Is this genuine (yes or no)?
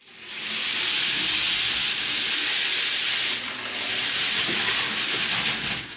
yes